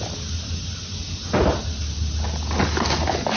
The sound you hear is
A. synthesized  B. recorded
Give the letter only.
B